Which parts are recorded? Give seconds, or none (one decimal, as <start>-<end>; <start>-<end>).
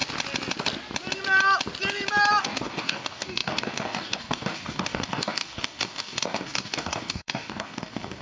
0.0-2.4